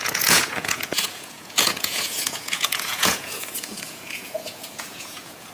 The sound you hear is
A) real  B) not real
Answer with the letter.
B